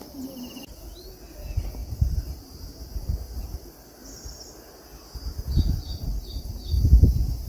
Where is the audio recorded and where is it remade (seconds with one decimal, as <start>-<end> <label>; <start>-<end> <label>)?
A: 0.0-7.5 recorded